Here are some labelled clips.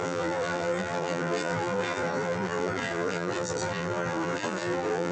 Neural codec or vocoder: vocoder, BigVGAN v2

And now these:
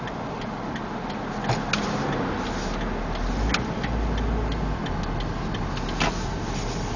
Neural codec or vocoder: none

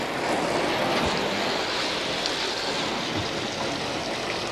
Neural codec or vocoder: none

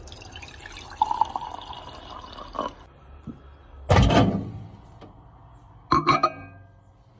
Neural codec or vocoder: none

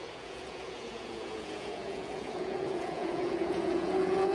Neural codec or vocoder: vocoder, Vocos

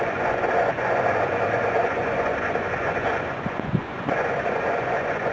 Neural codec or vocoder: vocoder, Vocos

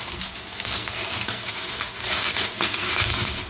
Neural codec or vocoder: codec, SNAC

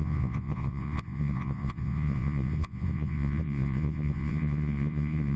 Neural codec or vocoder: vocoder, Vocos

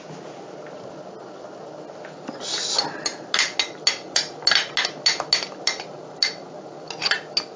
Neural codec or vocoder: none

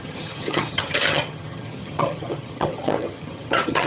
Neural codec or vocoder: vocoder, HiFi-GAN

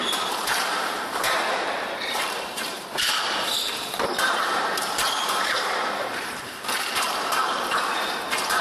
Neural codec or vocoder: vocoder, BigVGAN v2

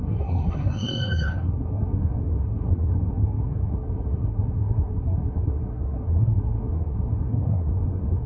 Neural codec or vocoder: codec, SNAC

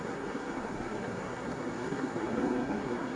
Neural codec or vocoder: codec, SNAC